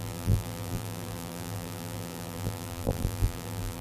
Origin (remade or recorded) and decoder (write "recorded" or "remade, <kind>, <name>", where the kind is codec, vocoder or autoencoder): remade, vocoder, BigVGAN v2